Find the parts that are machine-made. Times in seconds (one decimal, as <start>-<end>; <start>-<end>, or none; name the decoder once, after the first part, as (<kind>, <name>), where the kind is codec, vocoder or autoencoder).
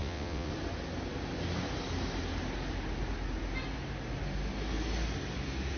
0.0-0.5 (vocoder, WaveNeXt)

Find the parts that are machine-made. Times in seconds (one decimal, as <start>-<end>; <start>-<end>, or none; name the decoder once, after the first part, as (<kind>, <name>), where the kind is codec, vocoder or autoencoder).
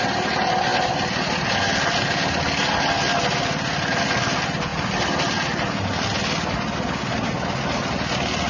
none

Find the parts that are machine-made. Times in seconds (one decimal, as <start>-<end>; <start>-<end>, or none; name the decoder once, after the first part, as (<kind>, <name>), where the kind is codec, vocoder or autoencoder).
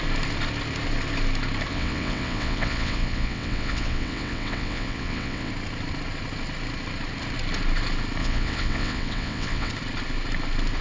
1.7-5.5 (vocoder, WaveNeXt); 8.2-9.7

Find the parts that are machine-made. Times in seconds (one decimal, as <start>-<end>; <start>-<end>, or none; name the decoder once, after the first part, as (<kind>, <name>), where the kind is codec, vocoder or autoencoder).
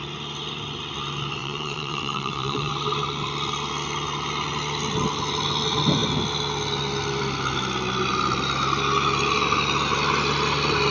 1.4-2.7 (vocoder, WaveNeXt)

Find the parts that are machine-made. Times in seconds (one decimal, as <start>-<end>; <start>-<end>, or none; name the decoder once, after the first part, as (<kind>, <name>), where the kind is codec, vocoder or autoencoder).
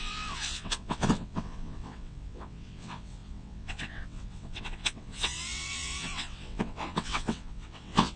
0.0-8.2 (vocoder, WaveNeXt)